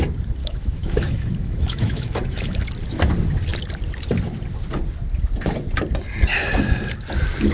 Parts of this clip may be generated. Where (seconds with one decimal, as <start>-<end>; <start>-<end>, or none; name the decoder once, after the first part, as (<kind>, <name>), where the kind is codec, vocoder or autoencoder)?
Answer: 0.4-2.7 (autoencoder, DAC-VAE)